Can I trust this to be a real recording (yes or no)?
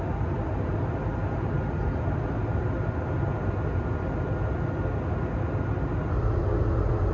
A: yes